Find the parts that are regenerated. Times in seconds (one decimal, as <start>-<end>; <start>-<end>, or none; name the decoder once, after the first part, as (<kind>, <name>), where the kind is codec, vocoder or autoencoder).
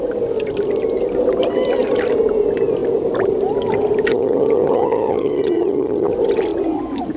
4.1-6.1 (vocoder, HiFi-GAN)